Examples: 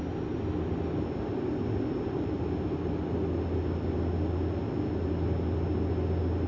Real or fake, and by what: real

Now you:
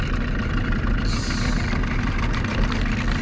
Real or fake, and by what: real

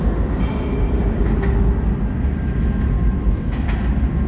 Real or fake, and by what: real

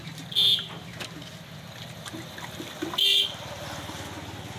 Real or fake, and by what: real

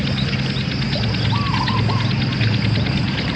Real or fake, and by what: real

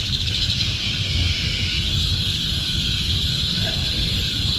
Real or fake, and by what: fake, codec, DAC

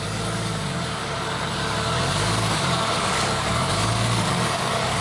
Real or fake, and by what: fake, codec, DAC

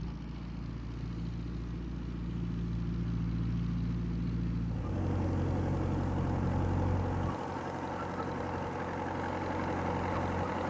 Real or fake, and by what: real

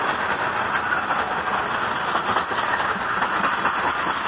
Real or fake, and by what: real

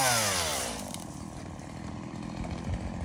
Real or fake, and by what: real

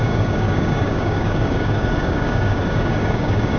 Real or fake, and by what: fake, codec, DAC